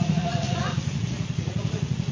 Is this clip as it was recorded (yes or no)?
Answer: no